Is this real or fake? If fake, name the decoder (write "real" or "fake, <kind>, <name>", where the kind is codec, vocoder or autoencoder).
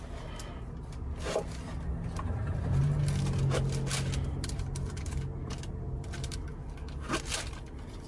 real